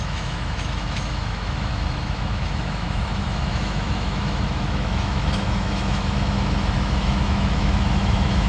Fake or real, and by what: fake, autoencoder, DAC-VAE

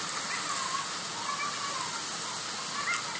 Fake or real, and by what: real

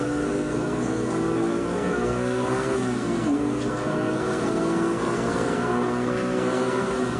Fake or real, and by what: fake, codec, SNAC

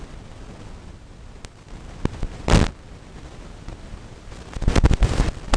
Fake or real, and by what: real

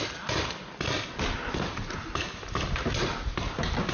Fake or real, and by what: real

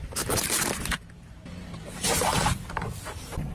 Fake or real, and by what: fake, vocoder, BigVGAN v2